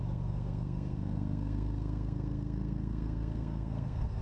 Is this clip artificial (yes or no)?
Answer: yes